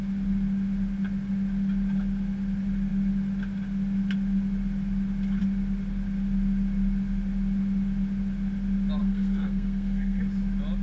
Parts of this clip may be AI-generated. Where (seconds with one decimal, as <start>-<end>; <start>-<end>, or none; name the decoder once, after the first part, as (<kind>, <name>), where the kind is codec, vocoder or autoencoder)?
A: 9.0-10.2 (codec, SNAC)